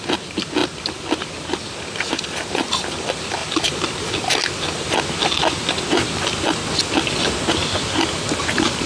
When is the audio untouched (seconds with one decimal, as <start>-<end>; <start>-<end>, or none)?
0.0-8.9